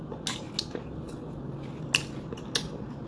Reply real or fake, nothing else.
real